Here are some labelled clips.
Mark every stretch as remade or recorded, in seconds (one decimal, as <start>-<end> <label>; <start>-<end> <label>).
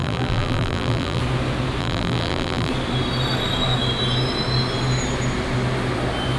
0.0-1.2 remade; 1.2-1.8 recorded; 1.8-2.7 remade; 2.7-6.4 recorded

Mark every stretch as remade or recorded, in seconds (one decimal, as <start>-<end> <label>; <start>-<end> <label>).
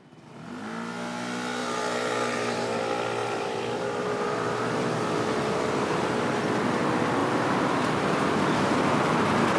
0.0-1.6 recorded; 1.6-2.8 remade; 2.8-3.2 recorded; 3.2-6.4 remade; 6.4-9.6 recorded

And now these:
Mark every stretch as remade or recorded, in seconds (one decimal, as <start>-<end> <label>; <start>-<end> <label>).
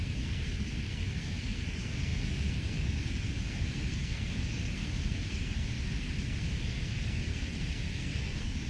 0.0-8.7 remade